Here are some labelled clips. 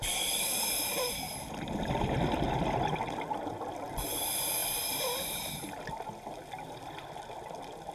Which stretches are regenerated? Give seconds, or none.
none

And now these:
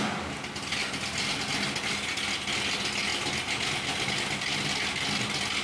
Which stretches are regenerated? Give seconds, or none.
none

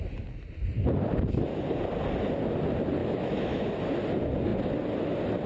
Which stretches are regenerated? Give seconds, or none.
3.0-3.7 (autoencoder, DAC-VAE)

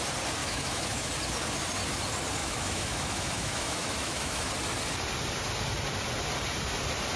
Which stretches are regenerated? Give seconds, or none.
0.4-1.1 (autoencoder, DAC-VAE); 2.4-4.5

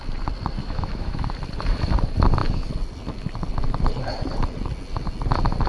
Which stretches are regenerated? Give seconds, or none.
0.6-1.3 (autoencoder, DAC-VAE)

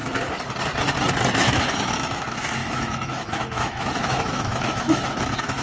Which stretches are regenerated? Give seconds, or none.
1.4-5.6 (autoencoder, DAC-VAE)